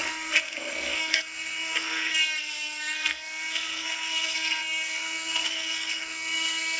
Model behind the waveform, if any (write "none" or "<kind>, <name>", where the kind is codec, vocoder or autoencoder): codec, SNAC